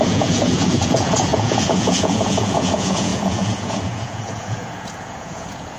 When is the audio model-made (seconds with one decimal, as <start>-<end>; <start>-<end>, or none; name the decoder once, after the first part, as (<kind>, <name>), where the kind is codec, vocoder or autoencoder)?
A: 0.0-5.8 (vocoder, Vocos)

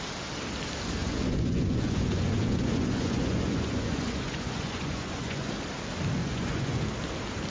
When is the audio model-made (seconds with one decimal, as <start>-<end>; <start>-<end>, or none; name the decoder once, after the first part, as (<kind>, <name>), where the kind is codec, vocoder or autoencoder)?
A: 1.0-5.5 (vocoder, Vocos); 6.2-6.8

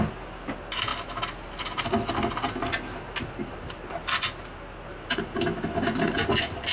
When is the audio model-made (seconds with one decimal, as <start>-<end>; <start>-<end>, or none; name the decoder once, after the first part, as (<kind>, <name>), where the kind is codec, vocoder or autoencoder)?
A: none

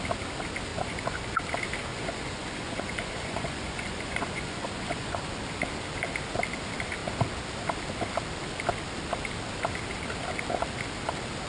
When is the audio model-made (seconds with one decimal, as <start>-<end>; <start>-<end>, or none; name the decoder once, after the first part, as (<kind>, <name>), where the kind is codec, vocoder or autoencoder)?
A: 0.7-1.4 (vocoder, Vocos); 1.9-5.2

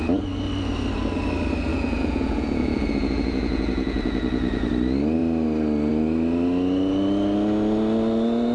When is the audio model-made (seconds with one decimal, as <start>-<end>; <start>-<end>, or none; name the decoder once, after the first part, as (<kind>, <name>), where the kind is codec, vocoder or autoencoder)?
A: 1.7-4.7 (vocoder, Vocos)

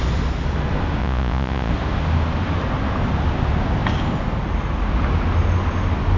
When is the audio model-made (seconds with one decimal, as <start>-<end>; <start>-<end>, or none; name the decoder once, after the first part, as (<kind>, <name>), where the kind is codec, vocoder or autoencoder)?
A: 1.0-1.7 (vocoder, Vocos)

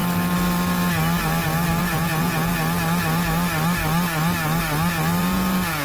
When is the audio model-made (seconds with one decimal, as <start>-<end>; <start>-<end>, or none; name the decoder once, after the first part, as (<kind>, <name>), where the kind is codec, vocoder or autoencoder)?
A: 1.8-2.5 (vocoder, Vocos); 5.2-5.8

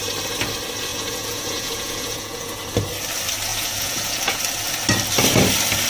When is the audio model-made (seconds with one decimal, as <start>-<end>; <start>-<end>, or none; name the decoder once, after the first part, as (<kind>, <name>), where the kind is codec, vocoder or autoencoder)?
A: 0.9-2.6 (vocoder, Vocos); 3.5-4.4